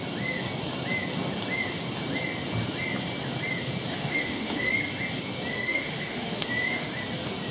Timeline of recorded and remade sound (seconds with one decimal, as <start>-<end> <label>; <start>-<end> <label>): 0.0-3.9 recorded; 3.9-4.7 remade; 4.7-5.5 recorded; 5.5-6.5 remade; 6.5-7.5 recorded